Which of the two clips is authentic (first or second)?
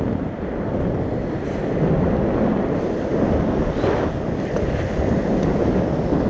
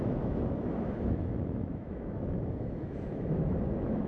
first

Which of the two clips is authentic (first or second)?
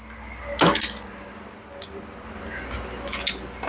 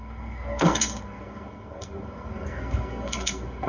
first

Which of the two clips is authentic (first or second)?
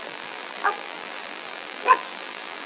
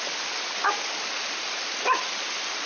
second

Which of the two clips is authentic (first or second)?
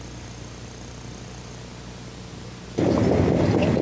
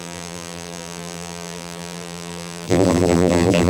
first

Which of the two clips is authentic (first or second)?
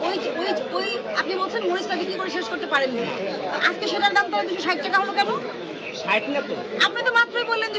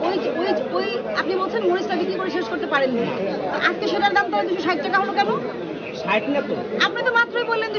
second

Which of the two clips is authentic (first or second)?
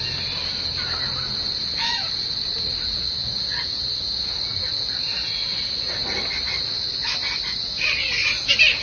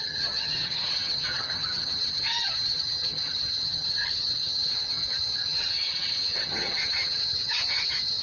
first